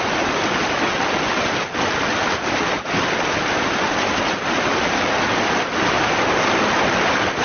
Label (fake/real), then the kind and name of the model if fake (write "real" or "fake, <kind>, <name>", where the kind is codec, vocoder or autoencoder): real